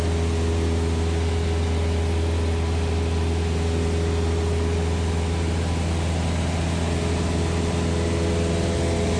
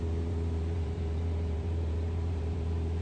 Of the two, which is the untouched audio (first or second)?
first